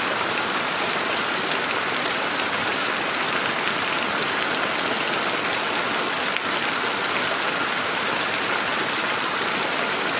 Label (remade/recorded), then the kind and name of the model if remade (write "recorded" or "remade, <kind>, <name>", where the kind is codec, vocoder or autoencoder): recorded